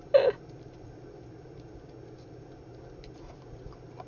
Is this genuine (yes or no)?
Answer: yes